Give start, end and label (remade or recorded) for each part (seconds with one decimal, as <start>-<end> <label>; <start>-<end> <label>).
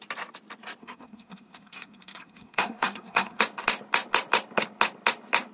0.0-0.8 recorded; 0.8-3.4 remade; 3.4-5.5 recorded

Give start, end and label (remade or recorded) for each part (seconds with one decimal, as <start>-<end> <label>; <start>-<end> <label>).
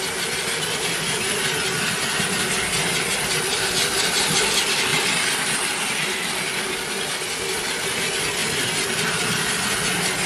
0.0-4.9 recorded; 4.9-6.4 remade; 6.4-10.3 recorded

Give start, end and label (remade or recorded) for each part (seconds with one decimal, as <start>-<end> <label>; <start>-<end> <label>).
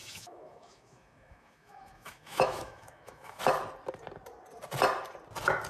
0.0-3.4 remade; 3.4-5.7 recorded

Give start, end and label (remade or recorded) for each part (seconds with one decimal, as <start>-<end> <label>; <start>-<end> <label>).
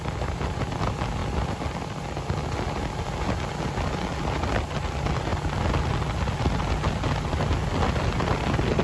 0.0-8.8 recorded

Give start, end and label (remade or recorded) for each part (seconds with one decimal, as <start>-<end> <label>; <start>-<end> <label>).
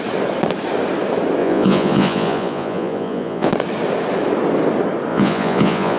0.0-1.4 recorded; 1.4-3.5 remade; 3.5-5.1 recorded; 5.1-6.0 remade